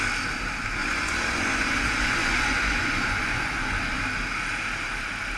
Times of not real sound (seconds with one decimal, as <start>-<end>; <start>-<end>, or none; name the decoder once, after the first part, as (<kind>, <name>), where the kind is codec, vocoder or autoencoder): 0.8-4.0 (vocoder, Vocos)